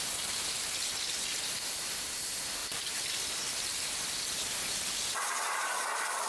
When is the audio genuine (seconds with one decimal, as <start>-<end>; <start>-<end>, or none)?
0.0-2.6; 3.2-6.3